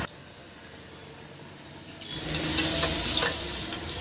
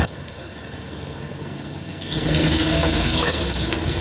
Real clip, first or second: first